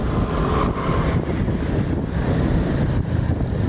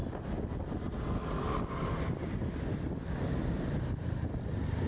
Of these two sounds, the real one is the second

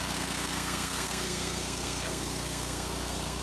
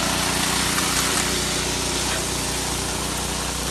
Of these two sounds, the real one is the second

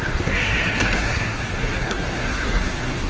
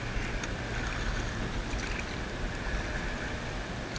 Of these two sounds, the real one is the second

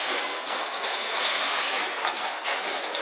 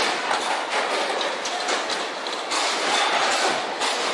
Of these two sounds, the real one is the second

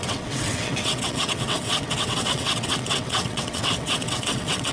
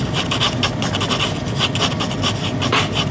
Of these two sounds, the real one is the second